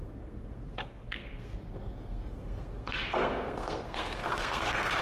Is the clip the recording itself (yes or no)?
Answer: no